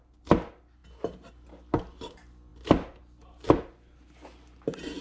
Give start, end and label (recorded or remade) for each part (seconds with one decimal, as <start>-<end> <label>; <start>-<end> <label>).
0.0-5.0 recorded